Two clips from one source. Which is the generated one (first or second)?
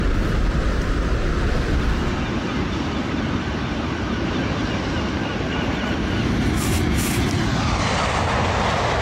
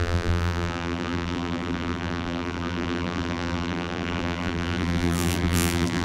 second